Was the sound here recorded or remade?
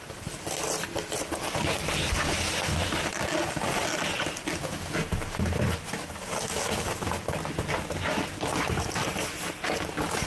recorded